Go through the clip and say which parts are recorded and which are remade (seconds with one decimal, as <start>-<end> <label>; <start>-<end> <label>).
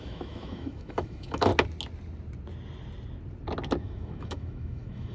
0.0-1.5 remade; 1.5-3.8 recorded; 3.8-5.1 remade